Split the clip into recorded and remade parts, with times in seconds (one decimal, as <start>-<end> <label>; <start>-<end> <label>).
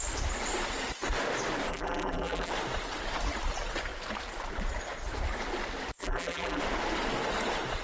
0.0-1.7 recorded; 1.7-2.5 remade; 2.5-6.0 recorded; 6.0-6.6 remade; 6.6-7.8 recorded